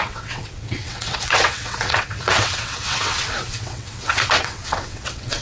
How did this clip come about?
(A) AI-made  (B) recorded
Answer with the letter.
A